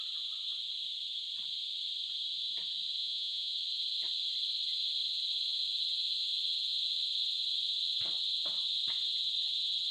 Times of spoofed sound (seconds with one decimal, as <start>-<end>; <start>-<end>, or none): 3.0-3.5